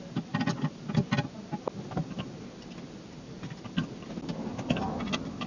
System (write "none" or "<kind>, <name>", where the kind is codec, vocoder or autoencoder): none